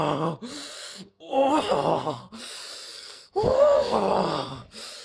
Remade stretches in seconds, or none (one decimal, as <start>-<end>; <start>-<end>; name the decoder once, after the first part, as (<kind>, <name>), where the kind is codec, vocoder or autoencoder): 0.7-1.5 (codec, SNAC); 1.9-2.4; 2.9-4.1